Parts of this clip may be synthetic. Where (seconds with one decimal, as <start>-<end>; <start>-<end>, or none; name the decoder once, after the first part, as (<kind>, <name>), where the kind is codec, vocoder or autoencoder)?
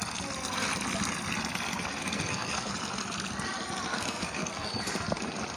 2.0-2.7 (codec, SNAC); 3.9-4.7